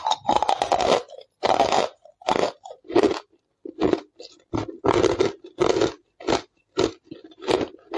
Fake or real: real